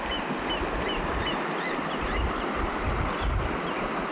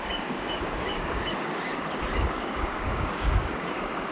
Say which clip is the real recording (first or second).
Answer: first